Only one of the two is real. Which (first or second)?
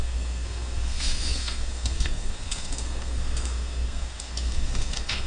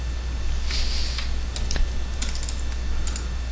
second